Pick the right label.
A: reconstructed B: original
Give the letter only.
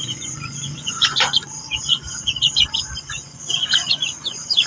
A